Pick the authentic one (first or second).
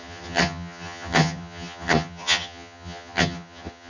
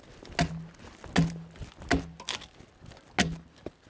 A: second